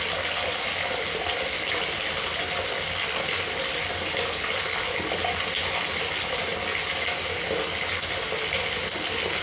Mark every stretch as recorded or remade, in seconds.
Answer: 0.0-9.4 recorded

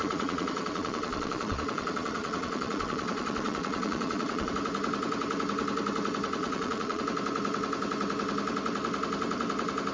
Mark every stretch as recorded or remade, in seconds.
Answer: 0.0-4.5 remade; 4.5-6.4 recorded; 6.4-7.0 remade; 7.0-9.9 recorded

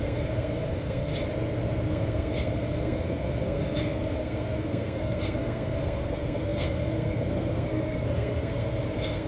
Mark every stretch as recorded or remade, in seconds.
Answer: 0.0-1.1 remade; 1.1-1.9 recorded; 1.9-9.3 remade

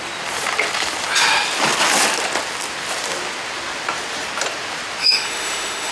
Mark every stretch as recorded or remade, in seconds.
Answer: 0.0-5.0 recorded; 5.0-5.9 remade

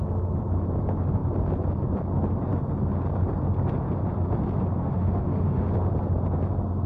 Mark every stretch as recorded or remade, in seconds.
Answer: 0.0-4.8 recorded; 4.8-5.7 remade; 5.7-6.9 recorded